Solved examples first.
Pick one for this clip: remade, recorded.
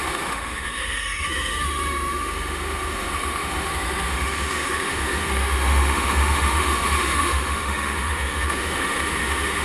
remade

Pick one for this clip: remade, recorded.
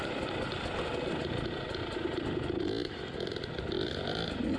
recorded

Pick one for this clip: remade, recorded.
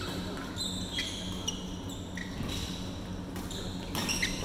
recorded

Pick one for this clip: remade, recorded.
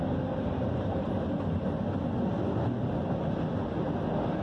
recorded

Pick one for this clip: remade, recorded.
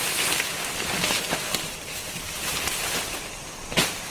remade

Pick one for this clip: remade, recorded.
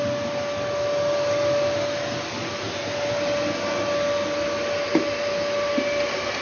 recorded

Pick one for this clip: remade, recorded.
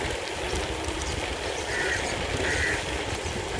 recorded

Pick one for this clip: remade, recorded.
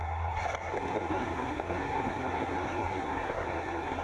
remade